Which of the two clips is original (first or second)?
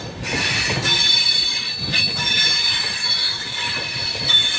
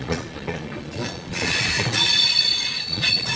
first